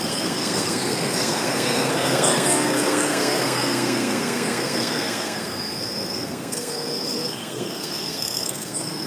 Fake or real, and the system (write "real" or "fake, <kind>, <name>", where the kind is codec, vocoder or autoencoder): fake, codec, SNAC